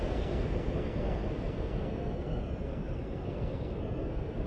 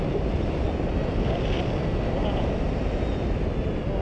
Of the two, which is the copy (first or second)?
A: first